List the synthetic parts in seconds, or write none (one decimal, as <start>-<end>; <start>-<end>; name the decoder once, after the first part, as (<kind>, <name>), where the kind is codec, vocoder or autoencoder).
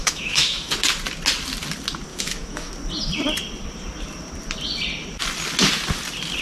0.0-0.7 (autoencoder, DAC-VAE); 2.1-2.7